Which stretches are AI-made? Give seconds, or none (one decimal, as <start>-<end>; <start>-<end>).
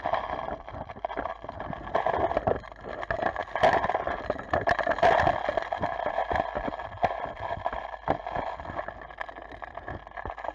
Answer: none